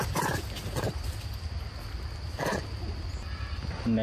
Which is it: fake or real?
real